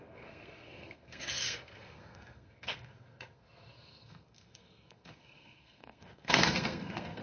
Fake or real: fake